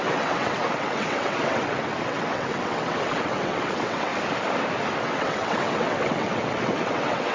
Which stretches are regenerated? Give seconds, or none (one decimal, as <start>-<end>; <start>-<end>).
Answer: 0.0-4.1; 5.0-7.3